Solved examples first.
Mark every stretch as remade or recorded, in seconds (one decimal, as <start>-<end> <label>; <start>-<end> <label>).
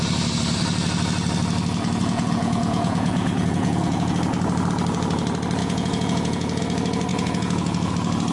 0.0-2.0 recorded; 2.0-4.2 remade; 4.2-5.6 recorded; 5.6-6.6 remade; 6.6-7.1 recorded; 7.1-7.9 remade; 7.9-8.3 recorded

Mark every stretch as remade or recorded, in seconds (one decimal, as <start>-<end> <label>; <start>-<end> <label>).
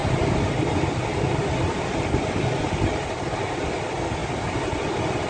0.0-5.3 recorded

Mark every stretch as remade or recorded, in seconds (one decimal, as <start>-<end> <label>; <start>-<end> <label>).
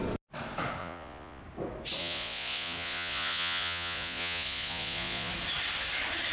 0.0-0.8 recorded; 0.8-1.4 remade; 1.4-2.0 recorded; 2.0-5.3 remade; 5.3-6.3 recorded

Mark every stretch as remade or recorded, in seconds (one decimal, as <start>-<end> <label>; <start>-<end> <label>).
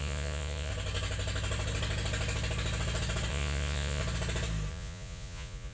0.0-0.7 remade; 0.7-3.3 recorded; 3.3-4.0 remade; 4.0-4.7 recorded; 4.7-5.7 remade